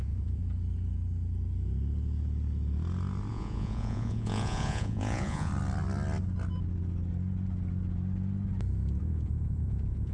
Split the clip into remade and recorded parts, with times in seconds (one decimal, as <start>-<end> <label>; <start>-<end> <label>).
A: 0.0-0.4 remade; 0.4-3.3 recorded; 3.3-5.5 remade; 5.5-9.0 recorded; 9.0-10.1 remade